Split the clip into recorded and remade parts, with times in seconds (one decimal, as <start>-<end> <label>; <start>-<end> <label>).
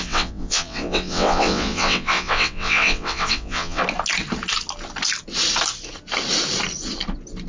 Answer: 0.0-3.8 remade; 3.8-7.5 recorded